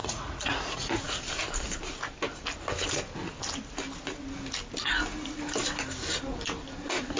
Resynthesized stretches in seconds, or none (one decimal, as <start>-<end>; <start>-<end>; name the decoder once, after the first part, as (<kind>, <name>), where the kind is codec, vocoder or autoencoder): 0.0-1.3 (vocoder, Vocos)